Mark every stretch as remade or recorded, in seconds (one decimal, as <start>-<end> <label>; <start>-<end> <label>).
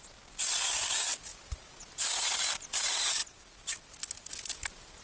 0.0-5.0 recorded